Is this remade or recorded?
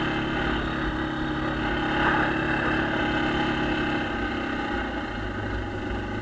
recorded